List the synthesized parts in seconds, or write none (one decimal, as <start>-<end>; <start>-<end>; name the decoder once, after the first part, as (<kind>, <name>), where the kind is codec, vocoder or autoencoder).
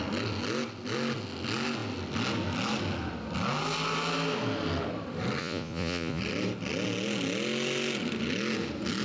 5.4-6.2 (vocoder, Vocos)